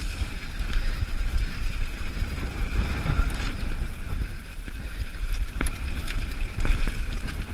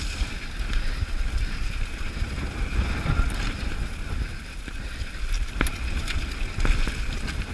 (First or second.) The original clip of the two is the second